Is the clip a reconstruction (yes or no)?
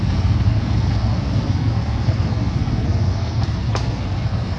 yes